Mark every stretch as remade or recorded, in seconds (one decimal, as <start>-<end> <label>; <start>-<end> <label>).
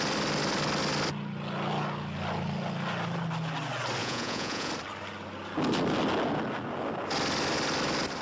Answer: 0.0-4.0 recorded; 4.0-4.7 remade; 4.7-8.2 recorded